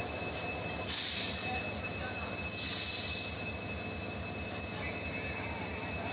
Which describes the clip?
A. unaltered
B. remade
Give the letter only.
A